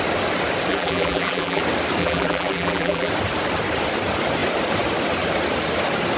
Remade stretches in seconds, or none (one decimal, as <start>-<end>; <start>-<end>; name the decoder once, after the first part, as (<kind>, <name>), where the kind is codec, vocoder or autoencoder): 0.7-1.6 (vocoder, BigVGAN v2); 2.0-3.1